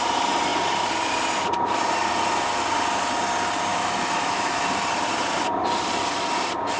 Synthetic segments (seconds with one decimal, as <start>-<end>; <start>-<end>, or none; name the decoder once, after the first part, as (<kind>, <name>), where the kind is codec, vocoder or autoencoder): 3.7-4.7 (autoencoder, DAC-VAE)